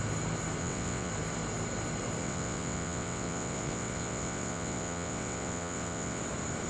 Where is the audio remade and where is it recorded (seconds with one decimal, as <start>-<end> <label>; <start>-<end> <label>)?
0.0-0.6 recorded; 0.6-1.1 remade; 1.1-2.2 recorded; 2.2-6.2 remade; 6.2-6.7 recorded